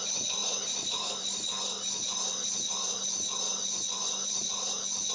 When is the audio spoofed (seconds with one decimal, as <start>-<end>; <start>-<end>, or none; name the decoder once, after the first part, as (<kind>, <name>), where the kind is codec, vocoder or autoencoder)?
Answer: 0.4-1.1 (vocoder, BigVGAN v2); 4.0-4.5